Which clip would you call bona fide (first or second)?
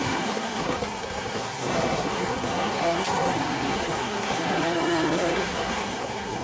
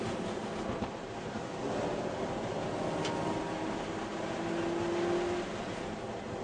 second